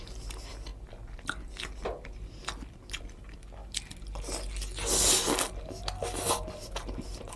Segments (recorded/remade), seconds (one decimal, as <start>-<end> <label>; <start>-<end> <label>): 0.0-7.4 recorded